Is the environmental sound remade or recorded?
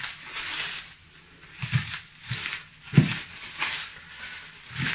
recorded